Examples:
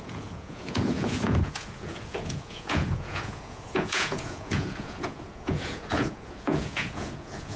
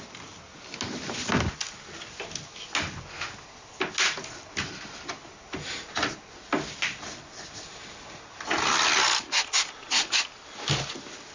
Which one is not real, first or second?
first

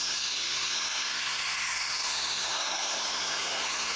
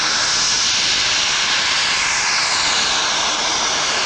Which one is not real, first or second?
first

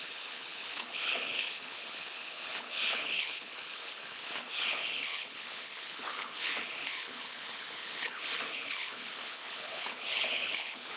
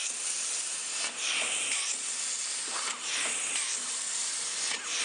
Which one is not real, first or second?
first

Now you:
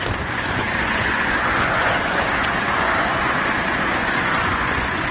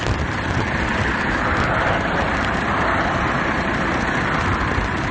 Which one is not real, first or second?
first